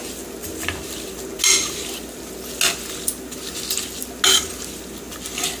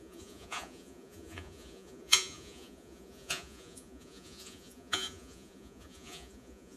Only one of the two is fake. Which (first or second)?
second